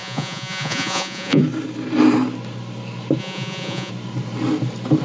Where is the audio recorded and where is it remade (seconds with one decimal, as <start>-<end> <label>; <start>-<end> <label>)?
0.0-1.4 remade; 1.4-3.2 recorded; 3.2-3.9 remade; 3.9-5.0 recorded